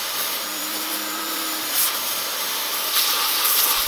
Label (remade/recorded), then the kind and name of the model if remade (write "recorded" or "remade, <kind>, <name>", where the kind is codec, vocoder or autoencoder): remade, vocoder, BigVGAN v2